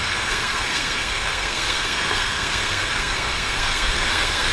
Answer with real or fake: fake